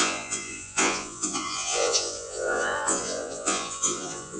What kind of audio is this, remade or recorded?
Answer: remade